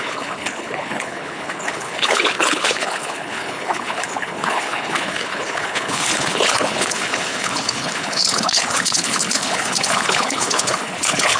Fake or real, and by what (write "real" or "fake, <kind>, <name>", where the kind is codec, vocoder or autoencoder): fake, codec, HILCodec